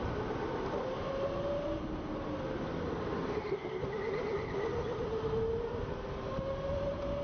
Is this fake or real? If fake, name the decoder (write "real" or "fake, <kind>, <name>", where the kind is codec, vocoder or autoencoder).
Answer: real